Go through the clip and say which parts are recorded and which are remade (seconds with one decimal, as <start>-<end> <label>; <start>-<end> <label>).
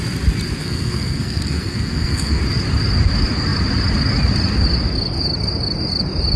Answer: 0.0-0.6 recorded; 0.6-2.4 remade; 2.4-6.4 recorded